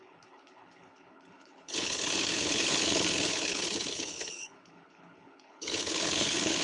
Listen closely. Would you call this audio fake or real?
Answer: fake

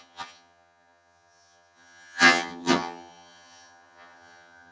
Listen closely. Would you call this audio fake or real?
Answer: fake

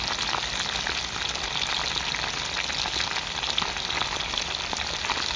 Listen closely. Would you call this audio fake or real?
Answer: real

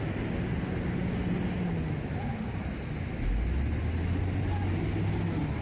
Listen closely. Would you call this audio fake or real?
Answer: real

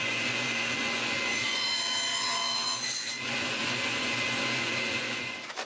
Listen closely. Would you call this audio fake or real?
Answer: fake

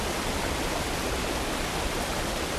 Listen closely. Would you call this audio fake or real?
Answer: fake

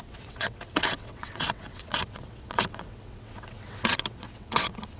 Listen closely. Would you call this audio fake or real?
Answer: fake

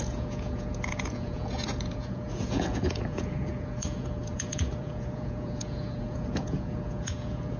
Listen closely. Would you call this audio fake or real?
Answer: fake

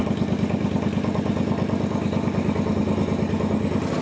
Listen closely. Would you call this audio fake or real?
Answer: real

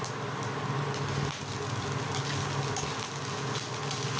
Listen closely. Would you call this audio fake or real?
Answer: real